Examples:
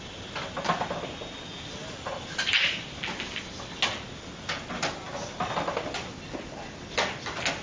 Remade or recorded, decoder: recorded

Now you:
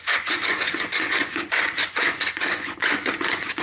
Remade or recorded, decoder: remade, vocoder, Vocos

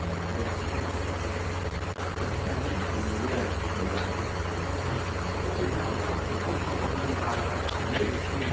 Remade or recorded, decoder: recorded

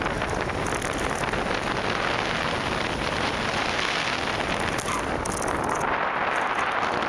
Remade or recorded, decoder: recorded